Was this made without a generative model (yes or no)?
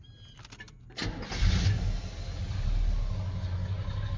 yes